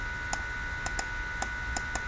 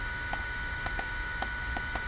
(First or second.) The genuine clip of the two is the first